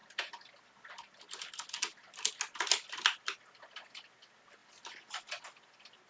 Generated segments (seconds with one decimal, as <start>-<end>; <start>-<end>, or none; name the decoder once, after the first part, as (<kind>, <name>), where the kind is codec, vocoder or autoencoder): none